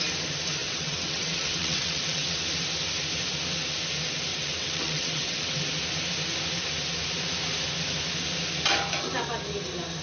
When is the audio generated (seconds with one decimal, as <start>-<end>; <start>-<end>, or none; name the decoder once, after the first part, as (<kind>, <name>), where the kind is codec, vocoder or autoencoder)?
0.6-2.4 (vocoder, WaveNeXt); 4.3-5.6